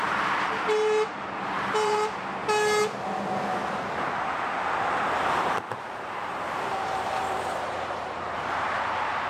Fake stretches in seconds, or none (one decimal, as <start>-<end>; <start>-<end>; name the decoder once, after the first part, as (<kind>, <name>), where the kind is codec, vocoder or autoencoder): 0.0-2.4 (vocoder, BigVGAN v2); 5.3-9.3